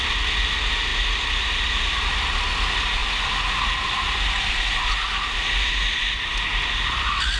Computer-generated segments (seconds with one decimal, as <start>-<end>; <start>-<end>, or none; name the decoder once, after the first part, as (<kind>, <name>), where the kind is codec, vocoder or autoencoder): none